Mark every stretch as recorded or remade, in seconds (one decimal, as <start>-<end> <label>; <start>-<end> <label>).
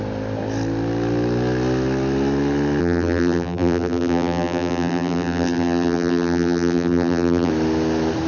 0.0-2.8 recorded; 2.8-7.5 remade; 7.5-8.3 recorded